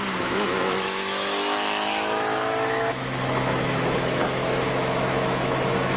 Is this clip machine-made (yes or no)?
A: yes